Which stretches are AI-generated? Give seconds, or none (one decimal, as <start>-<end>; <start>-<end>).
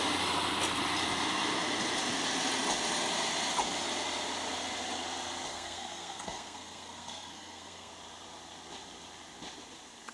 5.5-7.9